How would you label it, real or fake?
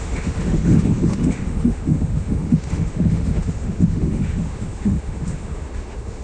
fake